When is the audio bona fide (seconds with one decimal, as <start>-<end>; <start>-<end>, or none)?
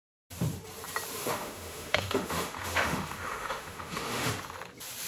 0.0-1.2; 4.3-5.1